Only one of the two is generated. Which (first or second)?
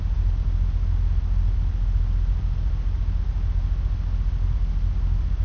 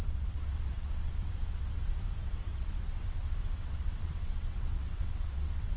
second